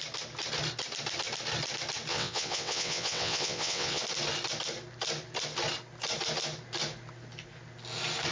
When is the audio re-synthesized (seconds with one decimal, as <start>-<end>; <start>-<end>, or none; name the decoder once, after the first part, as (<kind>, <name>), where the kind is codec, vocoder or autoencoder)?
2.1-4.0 (vocoder, WaveNeXt)